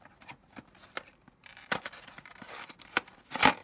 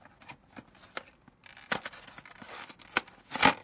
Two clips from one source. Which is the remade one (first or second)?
first